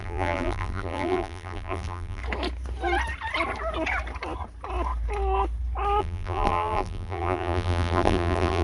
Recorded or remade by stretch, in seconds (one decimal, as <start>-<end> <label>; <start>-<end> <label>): 0.0-2.2 remade; 2.2-6.0 recorded; 6.0-8.6 remade